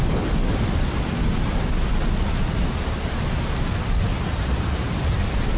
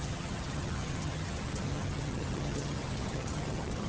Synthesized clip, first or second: second